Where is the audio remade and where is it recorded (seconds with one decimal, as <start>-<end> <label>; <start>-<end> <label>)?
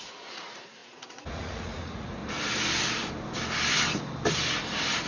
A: 0.0-2.2 remade; 2.2-5.1 recorded